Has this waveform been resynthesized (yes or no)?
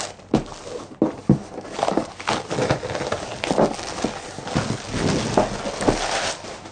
no